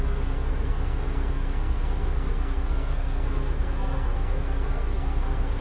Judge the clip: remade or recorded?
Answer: remade